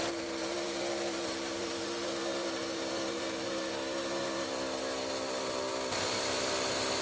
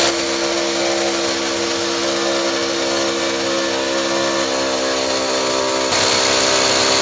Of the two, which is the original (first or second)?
second